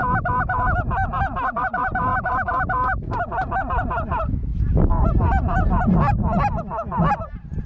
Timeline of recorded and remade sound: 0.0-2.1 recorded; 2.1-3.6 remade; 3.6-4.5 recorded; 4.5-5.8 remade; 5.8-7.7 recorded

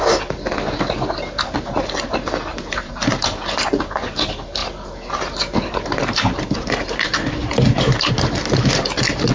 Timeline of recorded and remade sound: 0.0-2.5 recorded; 2.5-3.6 remade; 3.6-4.6 recorded; 4.6-8.1 remade; 8.1-9.3 recorded

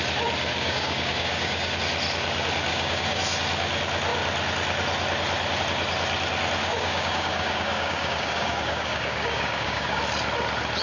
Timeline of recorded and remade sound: 0.0-0.5 recorded; 0.5-1.8 remade; 1.8-2.7 recorded; 2.7-3.2 remade; 3.2-6.6 recorded; 6.6-10.0 remade; 10.0-10.8 recorded

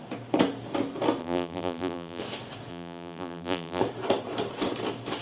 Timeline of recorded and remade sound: 0.0-1.2 recorded; 1.2-2.2 remade; 2.2-2.7 recorded; 2.7-3.8 remade; 3.8-5.2 recorded